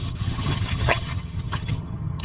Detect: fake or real fake